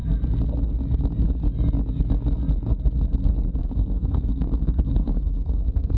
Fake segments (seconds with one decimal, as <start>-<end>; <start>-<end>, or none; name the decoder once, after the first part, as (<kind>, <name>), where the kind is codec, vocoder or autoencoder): 3.6-6.0 (codec, SNAC)